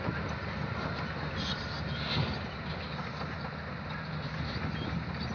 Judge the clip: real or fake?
real